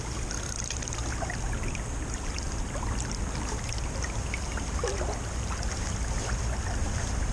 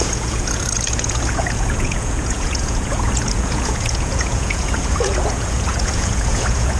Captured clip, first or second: first